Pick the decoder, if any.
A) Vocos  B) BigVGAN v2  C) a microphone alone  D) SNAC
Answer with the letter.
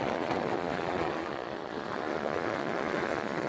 A